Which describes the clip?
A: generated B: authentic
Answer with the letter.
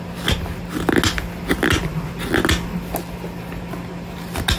B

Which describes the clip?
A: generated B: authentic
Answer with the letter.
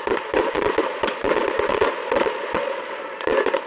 A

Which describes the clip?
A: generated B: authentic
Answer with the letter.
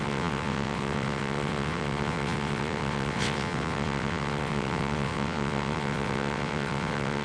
A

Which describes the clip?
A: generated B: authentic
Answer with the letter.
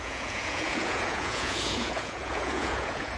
A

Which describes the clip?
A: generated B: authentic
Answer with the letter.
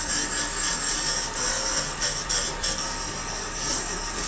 B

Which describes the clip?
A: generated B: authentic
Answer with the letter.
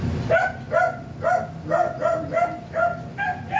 B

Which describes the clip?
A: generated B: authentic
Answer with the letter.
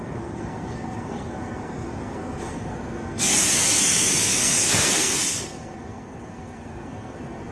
A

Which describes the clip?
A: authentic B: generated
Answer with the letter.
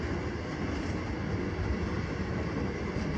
A